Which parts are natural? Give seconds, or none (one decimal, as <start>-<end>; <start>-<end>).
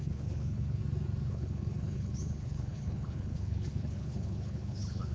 0.8-1.3